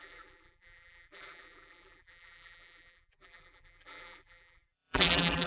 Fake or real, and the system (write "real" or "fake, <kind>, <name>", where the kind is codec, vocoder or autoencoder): fake, vocoder, BigVGAN v2